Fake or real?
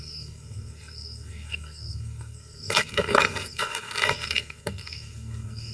fake